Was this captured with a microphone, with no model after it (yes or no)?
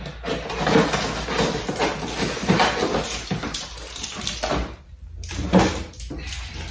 yes